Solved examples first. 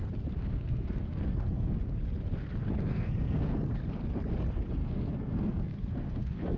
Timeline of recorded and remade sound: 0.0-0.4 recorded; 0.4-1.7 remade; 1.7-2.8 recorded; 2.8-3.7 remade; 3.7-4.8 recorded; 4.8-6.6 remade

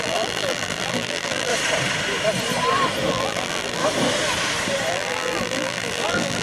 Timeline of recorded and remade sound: 0.0-1.5 remade; 1.5-3.1 recorded; 3.1-3.8 remade; 3.8-4.9 recorded; 4.9-6.4 remade

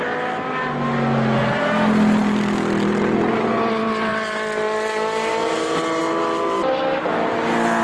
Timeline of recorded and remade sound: 0.0-7.8 recorded